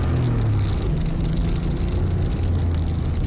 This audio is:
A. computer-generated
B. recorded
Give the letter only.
B